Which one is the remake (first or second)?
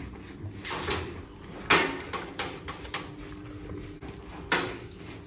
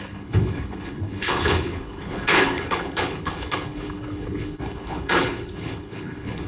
second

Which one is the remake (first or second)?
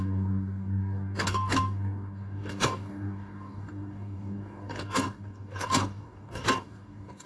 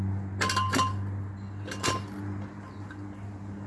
first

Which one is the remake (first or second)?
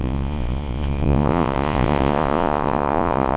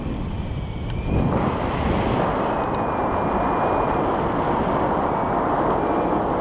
first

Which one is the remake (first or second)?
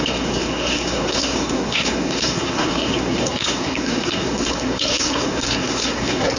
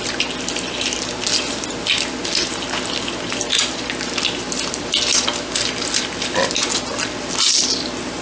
first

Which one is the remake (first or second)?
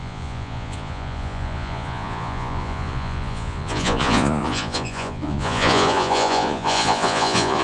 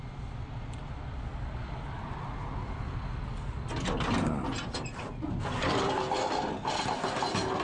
first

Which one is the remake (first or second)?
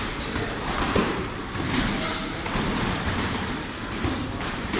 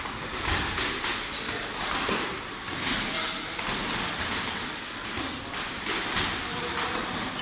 first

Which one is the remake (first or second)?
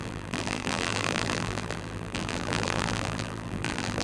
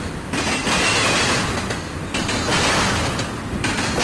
first